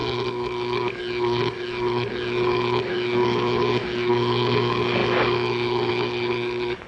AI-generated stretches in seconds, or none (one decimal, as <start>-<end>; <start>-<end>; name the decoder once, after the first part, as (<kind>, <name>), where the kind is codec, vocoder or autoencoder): 0.0-6.9 (codec, DAC)